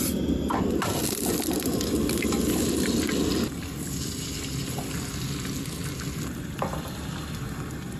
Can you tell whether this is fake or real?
real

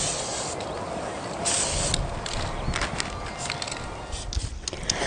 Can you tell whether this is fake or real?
real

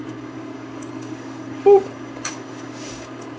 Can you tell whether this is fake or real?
fake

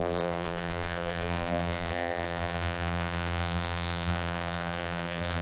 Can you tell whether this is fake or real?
fake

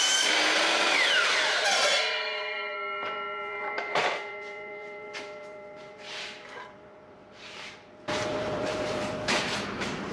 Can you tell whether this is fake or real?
fake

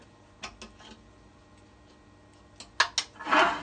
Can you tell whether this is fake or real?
real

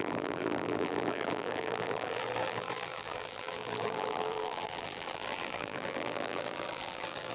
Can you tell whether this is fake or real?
fake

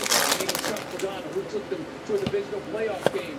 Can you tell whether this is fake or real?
real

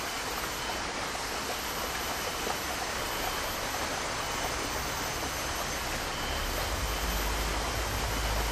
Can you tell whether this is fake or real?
real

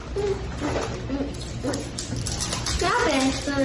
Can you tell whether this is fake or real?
real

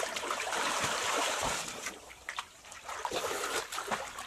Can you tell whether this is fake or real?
fake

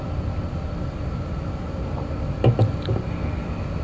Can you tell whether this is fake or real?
real